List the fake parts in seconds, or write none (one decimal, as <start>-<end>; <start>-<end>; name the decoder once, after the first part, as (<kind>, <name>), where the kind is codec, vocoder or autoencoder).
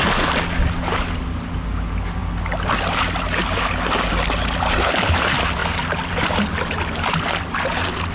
none